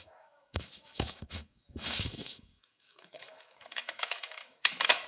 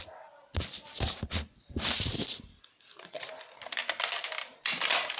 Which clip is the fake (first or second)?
first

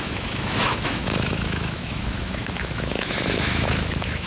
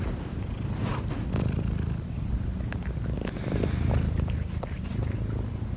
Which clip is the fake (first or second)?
first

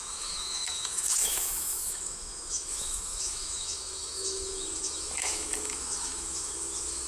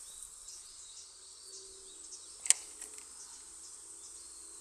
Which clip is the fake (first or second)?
first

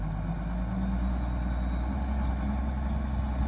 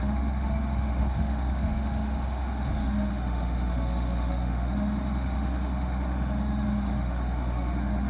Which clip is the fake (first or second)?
second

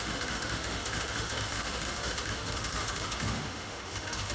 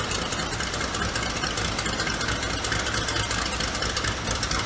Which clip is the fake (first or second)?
first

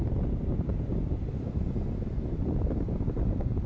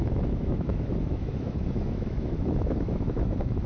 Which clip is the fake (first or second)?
second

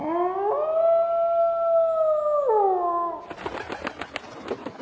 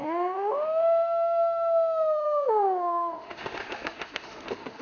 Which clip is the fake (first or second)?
second